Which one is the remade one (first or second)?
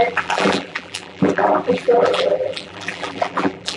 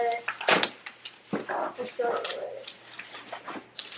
first